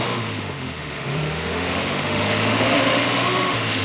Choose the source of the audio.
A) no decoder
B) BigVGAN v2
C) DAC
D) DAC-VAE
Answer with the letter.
D